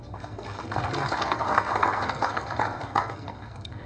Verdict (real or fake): fake